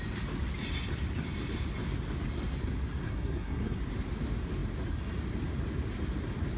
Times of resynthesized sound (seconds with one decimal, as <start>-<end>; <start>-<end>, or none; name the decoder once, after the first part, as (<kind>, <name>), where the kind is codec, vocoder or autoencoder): 3.0-3.8 (codec, SNAC)